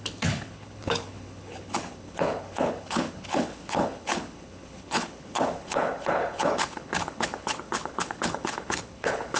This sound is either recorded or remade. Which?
remade